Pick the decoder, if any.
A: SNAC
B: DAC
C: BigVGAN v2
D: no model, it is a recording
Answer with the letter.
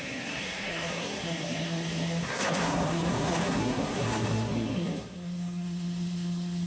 A